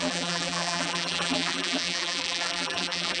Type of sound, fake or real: fake